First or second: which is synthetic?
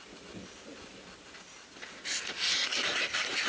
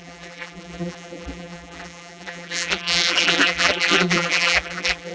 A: second